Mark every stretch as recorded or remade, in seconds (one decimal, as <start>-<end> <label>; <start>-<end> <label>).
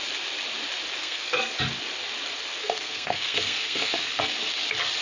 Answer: 0.0-1.0 recorded; 1.0-1.5 remade; 1.5-2.6 recorded; 2.6-4.2 remade; 4.2-5.0 recorded